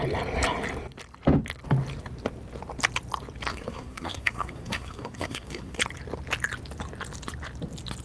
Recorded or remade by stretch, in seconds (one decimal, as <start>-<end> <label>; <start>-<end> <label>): 0.0-3.5 recorded; 3.5-5.8 remade; 5.8-8.0 recorded